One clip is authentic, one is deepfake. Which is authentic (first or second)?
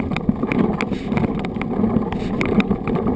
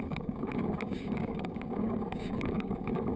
first